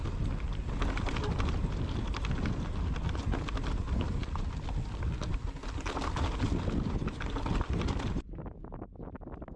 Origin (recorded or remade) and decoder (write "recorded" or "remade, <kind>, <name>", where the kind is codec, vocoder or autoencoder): recorded